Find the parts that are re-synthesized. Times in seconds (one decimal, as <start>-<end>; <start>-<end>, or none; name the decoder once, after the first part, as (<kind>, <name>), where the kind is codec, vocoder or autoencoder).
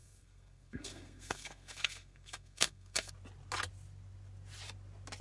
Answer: 0.0-3.1 (codec, SNAC)